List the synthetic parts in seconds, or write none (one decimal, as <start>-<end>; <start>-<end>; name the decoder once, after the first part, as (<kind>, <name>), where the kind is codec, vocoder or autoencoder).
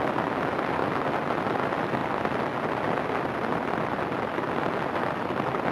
none